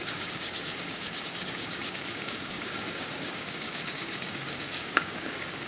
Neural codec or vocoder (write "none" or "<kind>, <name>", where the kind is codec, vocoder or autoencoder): codec, DAC